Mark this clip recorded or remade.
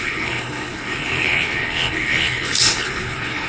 remade